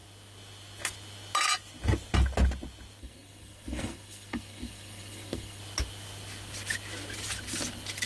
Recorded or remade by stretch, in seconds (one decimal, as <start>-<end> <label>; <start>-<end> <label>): 0.0-3.0 recorded; 3.0-5.6 remade; 5.6-8.1 recorded